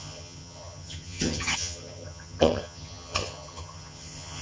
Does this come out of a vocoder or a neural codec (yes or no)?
yes